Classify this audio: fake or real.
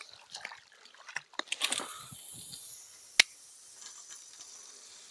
real